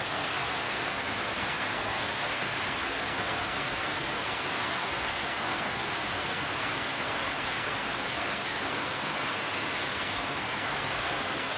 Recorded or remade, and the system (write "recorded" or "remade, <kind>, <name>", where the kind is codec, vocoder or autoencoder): remade, codec, SNAC